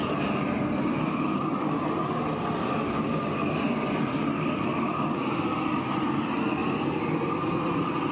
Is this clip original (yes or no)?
yes